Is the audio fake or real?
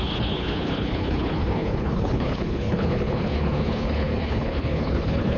fake